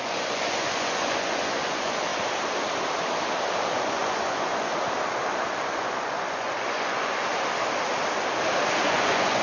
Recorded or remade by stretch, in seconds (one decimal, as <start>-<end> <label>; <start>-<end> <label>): 0.0-2.1 remade; 2.1-3.7 recorded; 3.7-4.7 remade; 4.7-5.6 recorded; 5.6-7.3 remade; 7.3-8.8 recorded; 8.8-9.4 remade